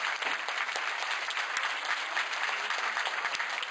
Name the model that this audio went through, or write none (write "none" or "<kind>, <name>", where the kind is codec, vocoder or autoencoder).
none